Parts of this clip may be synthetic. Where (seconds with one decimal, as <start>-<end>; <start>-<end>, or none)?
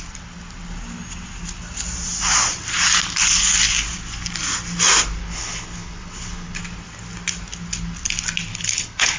5.2-6.6; 8.5-9.2